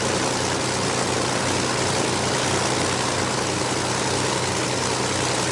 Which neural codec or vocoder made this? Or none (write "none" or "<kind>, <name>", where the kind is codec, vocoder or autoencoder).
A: none